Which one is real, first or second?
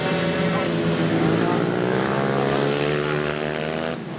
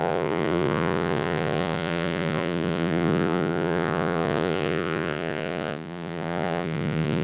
first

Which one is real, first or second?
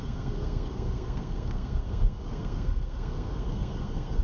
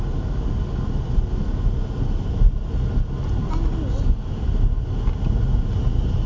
second